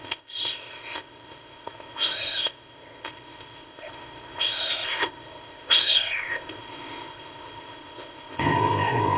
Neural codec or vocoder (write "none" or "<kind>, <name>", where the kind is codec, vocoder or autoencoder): codec, ZipCodec